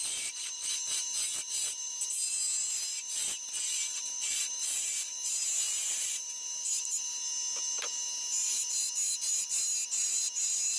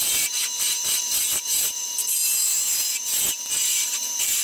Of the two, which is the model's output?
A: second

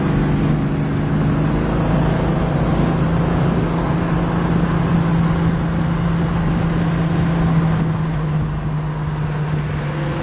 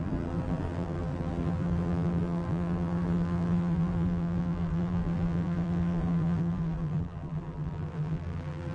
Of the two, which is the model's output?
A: second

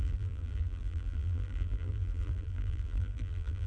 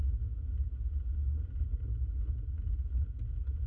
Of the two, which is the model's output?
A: first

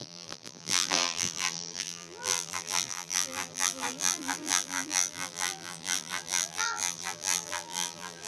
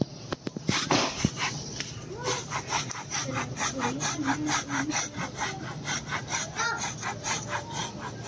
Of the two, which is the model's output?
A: first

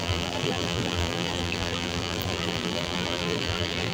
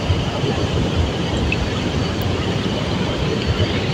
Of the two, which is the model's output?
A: first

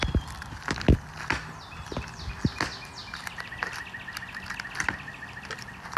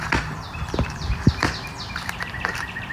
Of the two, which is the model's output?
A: second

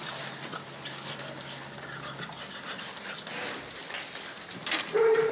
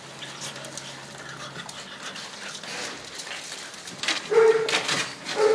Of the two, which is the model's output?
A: second